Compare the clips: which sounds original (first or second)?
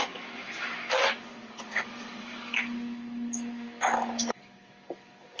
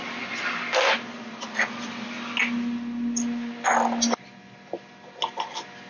second